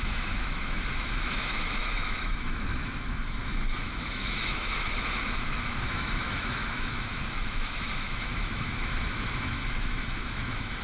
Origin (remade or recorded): remade